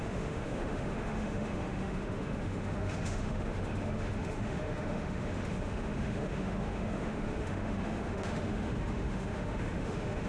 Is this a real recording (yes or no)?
no